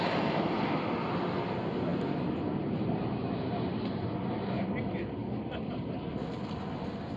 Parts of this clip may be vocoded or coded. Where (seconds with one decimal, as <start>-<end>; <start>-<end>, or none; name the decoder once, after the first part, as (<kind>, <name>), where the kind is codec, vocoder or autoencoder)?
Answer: none